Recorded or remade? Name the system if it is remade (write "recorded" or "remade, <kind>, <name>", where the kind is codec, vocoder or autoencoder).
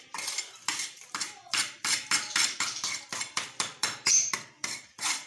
remade, vocoder, BigVGAN v2